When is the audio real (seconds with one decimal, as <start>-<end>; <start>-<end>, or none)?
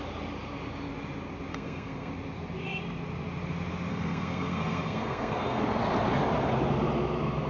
0.0-1.5; 2.1-3.9; 5.6-7.5